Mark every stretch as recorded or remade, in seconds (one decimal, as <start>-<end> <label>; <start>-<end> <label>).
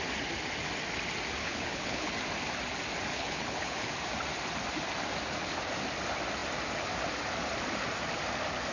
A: 0.0-1.4 recorded; 1.4-2.1 remade; 2.1-3.1 recorded; 3.1-3.9 remade; 3.9-8.7 recorded